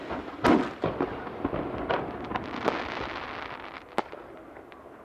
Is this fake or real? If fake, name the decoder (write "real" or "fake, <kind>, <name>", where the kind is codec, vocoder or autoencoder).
real